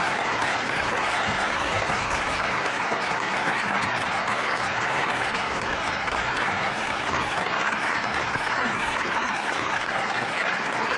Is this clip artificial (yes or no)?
yes